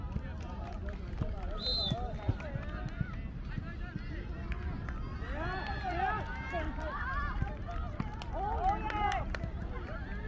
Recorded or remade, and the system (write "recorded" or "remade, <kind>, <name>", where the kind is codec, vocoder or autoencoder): recorded